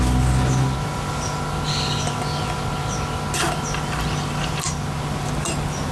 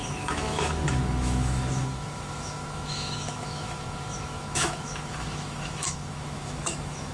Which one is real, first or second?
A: first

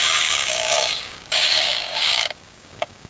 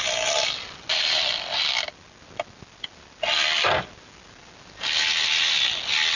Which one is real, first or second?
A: second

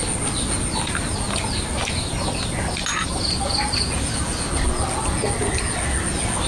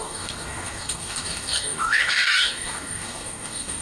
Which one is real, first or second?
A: first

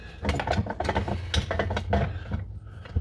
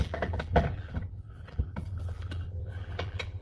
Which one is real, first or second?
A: first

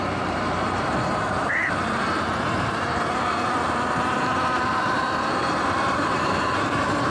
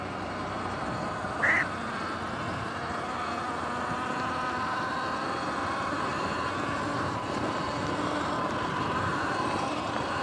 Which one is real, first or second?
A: second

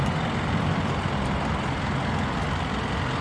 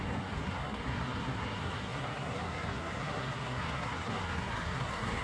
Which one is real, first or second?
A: first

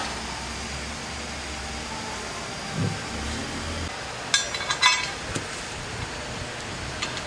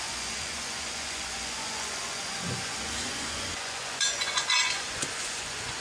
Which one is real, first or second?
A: first